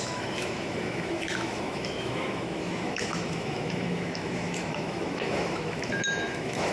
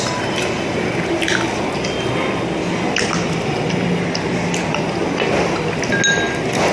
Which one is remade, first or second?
first